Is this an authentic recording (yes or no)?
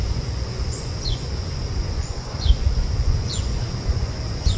no